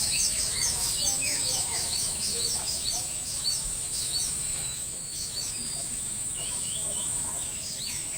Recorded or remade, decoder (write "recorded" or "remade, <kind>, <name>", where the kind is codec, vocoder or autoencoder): remade, autoencoder, DAC-VAE